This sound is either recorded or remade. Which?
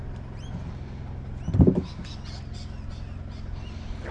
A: recorded